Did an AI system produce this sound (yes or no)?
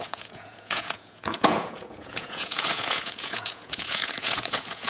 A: yes